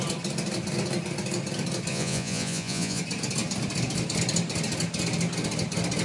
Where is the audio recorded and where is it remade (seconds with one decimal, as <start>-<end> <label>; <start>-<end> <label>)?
0.0-1.9 recorded; 1.9-3.0 remade; 3.0-6.0 recorded